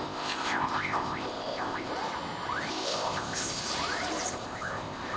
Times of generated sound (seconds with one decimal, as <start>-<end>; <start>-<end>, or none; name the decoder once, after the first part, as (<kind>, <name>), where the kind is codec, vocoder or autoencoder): 0.0-1.9 (codec, ZipCodec); 2.7-3.6; 4.3-5.2